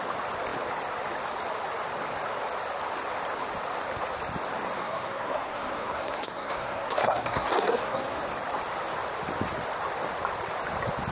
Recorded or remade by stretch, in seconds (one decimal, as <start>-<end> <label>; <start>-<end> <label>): 0.0-4.8 recorded; 4.8-8.2 remade; 8.2-11.1 recorded